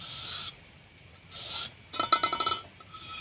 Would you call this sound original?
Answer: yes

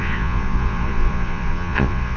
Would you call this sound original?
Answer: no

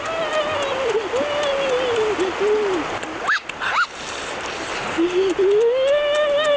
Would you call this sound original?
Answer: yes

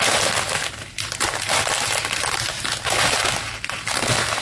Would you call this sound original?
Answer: yes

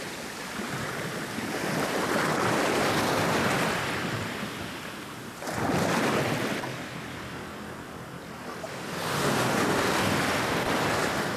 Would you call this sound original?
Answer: yes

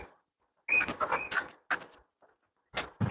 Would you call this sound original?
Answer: yes